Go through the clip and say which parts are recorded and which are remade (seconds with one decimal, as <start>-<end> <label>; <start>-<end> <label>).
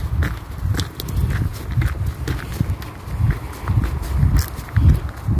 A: 0.0-5.4 recorded